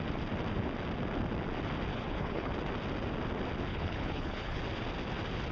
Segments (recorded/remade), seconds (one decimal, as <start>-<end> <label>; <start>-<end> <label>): 0.0-1.9 recorded; 1.9-2.5 remade; 2.5-3.7 recorded; 3.7-4.6 remade; 4.6-5.5 recorded